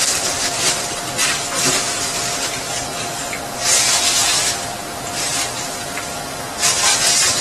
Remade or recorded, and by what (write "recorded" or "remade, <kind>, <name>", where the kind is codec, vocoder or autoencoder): recorded